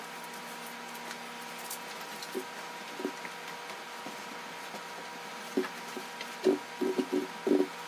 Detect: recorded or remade recorded